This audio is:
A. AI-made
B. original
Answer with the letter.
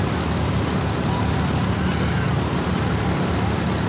B